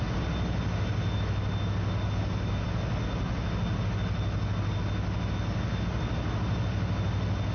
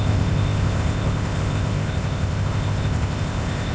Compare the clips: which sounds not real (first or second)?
second